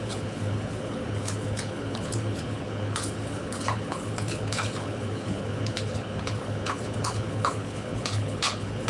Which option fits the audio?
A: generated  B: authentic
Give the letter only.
A